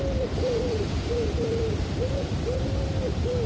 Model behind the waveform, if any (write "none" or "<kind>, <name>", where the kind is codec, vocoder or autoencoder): vocoder, BigVGAN v2